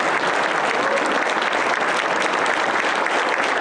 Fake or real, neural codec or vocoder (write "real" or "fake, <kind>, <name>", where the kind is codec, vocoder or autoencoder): real